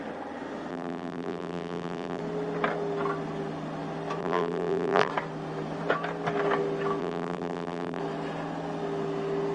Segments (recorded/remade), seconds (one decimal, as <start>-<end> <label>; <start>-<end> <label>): 0.0-0.7 recorded; 0.7-2.2 remade; 2.2-4.2 recorded; 4.2-5.1 remade; 5.1-7.0 recorded; 7.0-8.0 remade; 8.0-9.5 recorded